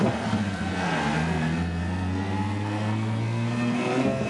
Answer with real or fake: fake